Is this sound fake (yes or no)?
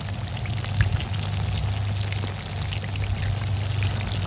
no